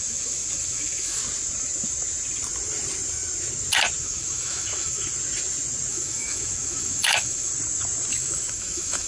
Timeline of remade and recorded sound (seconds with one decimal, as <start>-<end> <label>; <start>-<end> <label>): 0.0-1.2 remade; 1.2-4.0 recorded; 4.0-5.1 remade; 5.1-5.9 recorded; 5.9-7.5 remade; 7.5-8.1 recorded; 8.1-9.1 remade